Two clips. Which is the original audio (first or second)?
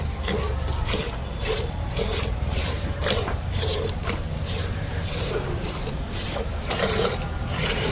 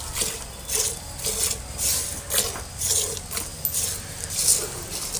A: second